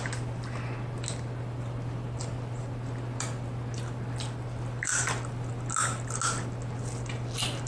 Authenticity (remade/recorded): recorded